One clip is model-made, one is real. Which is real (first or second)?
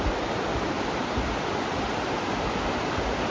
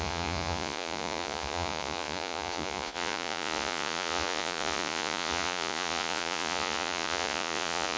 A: first